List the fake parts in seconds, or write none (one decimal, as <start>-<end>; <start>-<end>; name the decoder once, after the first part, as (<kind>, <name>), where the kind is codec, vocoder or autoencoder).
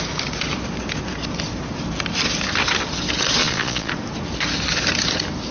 3.4-3.9 (vocoder, Vocos)